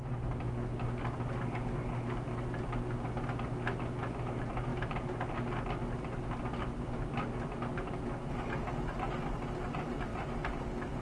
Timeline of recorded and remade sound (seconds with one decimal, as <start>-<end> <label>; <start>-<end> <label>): 0.0-11.0 recorded